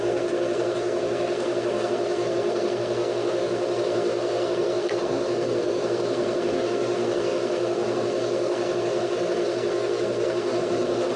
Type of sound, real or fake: fake